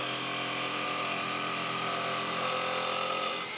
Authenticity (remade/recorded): recorded